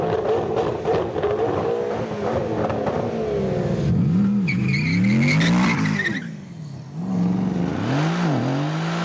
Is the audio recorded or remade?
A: recorded